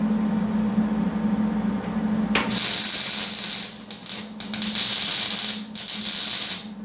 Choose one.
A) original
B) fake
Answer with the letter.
A